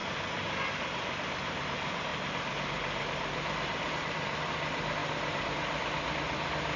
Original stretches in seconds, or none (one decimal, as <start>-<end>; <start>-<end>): 0.0-0.7